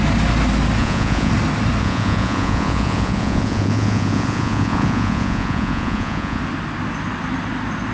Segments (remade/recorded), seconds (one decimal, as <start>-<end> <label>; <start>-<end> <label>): 0.0-0.8 recorded; 0.8-1.3 remade; 1.3-1.8 recorded; 1.8-6.4 remade; 6.4-7.9 recorded